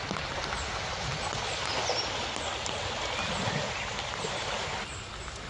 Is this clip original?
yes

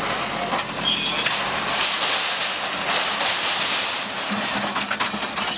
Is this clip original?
yes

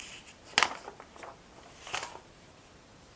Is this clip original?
yes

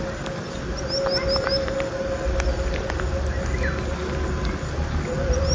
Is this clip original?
yes